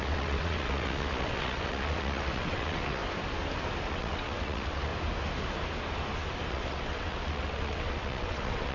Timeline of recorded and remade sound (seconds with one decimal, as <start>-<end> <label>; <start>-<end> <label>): 0.0-3.0 remade; 3.0-3.9 recorded; 3.9-4.9 remade; 4.9-6.5 recorded; 6.5-8.7 remade